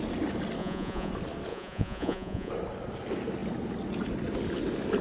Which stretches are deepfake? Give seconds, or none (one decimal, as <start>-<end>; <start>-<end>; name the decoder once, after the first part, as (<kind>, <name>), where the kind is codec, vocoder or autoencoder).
0.6-1.1 (vocoder, Vocos); 1.5-2.5